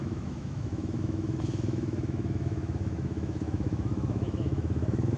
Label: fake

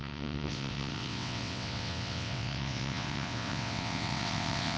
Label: fake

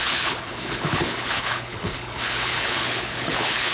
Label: fake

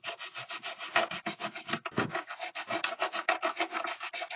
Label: real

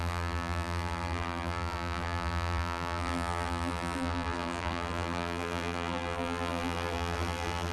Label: fake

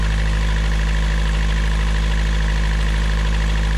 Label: real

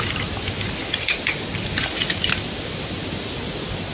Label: real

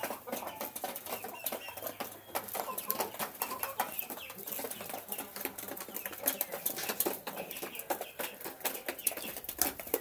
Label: real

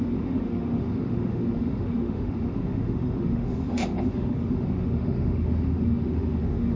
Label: fake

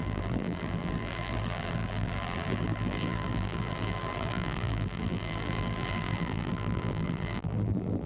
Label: fake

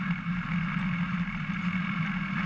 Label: real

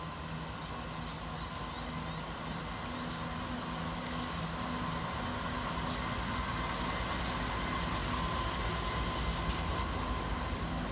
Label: real